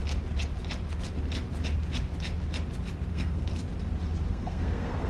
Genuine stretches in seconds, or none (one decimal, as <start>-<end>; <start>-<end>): 0.0-3.1; 3.5-4.3